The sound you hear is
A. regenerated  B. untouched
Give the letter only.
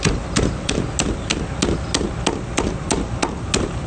B